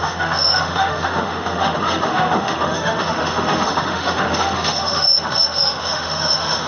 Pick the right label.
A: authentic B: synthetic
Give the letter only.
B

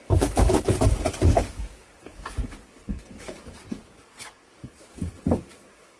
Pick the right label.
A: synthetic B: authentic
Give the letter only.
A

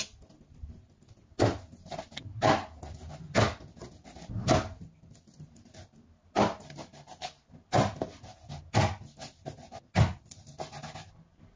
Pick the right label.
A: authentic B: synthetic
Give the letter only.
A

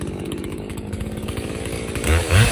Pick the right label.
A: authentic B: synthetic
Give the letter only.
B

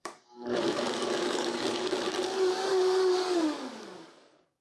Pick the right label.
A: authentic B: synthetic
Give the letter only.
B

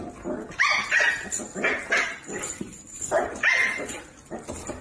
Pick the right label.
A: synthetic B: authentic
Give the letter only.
B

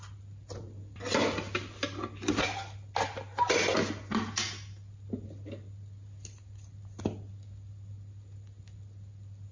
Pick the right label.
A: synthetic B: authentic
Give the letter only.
B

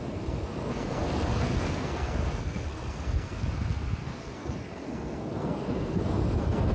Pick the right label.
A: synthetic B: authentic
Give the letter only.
A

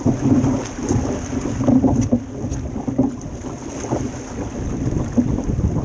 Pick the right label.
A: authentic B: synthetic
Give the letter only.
A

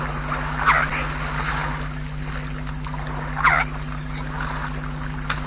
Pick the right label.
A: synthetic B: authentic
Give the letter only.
B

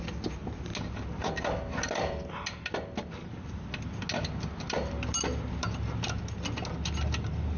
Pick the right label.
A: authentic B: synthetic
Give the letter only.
A